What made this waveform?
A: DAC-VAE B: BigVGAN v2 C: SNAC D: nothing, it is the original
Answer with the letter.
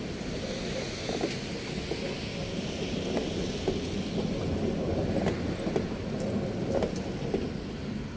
D